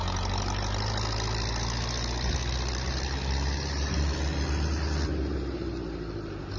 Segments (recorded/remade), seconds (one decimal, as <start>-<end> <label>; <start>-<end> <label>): 0.0-6.6 recorded